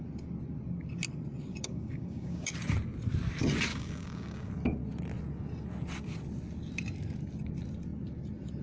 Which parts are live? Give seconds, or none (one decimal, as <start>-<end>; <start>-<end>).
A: 0.0-1.5; 2.5-3.7; 4.5-8.6